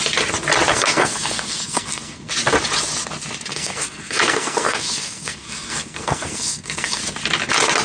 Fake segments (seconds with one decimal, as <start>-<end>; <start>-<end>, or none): 0.7-2.3; 3.5-7.0